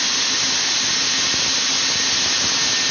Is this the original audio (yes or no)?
yes